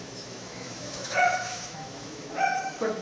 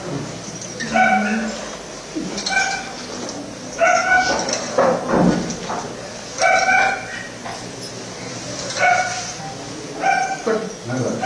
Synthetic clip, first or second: first